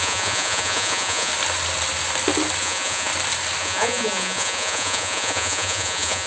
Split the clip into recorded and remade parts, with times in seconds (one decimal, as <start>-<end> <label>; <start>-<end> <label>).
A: 0.0-1.3 remade; 1.3-2.6 recorded; 2.6-3.1 remade; 3.1-3.6 recorded; 3.6-6.3 remade

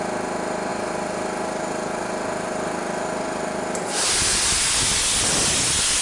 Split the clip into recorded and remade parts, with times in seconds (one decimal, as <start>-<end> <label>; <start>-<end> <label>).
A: 0.0-0.7 recorded; 0.7-4.0 remade; 4.0-6.0 recorded